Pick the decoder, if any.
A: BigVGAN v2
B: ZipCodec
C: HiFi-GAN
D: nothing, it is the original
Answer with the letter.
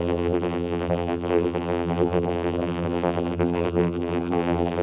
A